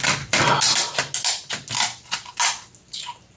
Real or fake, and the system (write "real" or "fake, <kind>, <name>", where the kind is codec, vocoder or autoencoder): real